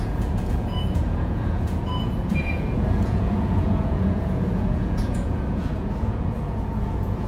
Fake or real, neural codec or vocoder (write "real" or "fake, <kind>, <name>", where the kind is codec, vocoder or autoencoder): fake, vocoder, Vocos